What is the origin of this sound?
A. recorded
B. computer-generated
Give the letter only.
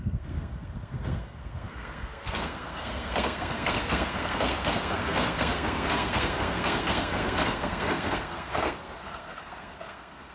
B